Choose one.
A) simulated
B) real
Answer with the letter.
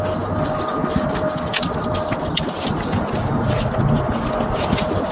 B